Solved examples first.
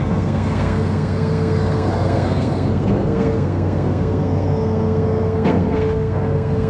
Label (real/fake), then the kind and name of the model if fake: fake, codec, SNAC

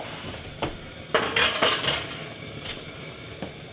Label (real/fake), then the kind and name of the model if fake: real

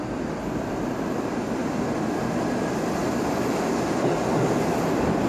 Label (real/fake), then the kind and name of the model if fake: real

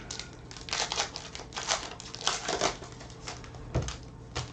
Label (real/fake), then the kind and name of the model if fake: real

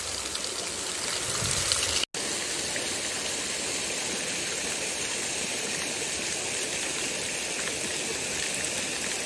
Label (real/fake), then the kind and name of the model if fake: real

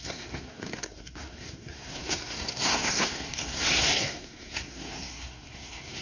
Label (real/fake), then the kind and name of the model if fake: fake, codec, SNAC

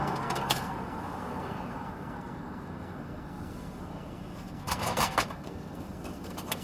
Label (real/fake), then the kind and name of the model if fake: fake, codec, SNAC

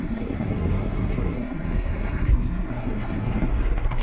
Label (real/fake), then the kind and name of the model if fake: fake, codec, SNAC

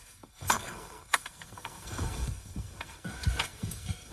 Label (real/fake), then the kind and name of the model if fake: fake, codec, SNAC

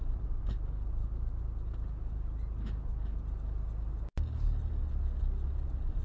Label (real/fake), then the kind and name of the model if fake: real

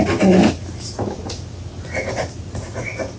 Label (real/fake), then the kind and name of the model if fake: real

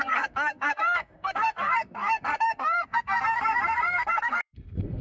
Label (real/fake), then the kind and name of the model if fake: fake, codec, SNAC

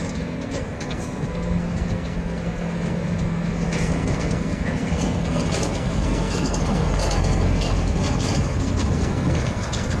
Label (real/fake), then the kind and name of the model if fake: fake, codec, SNAC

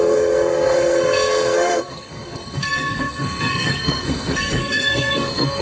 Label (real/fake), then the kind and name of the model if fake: fake, codec, SNAC